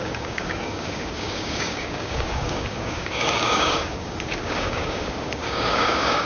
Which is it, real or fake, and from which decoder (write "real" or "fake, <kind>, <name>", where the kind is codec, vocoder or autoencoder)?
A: fake, codec, DAC